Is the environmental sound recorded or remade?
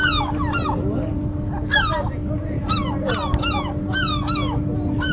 recorded